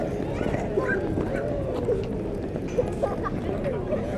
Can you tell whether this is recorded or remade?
recorded